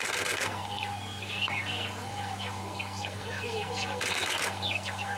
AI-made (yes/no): yes